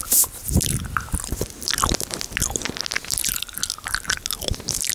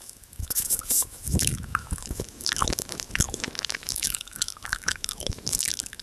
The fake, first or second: second